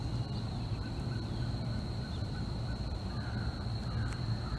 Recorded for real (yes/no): yes